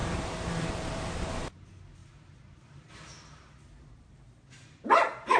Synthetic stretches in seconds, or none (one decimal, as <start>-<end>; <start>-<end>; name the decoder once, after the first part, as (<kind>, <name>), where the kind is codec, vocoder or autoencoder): 0.0-1.1 (vocoder, BigVGAN v2)